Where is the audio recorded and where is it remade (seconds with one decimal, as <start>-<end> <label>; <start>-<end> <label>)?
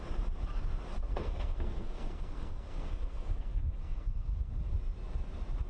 0.0-1.1 recorded; 1.1-4.5 remade; 4.5-5.7 recorded